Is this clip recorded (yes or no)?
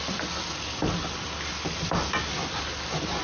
yes